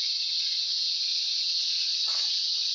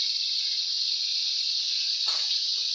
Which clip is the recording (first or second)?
second